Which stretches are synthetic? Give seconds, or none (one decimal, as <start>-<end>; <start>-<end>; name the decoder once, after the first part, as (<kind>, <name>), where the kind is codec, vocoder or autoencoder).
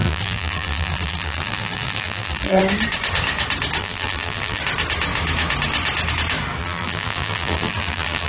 0.0-2.6 (vocoder, BigVGAN v2); 3.8-4.6; 6.6-8.3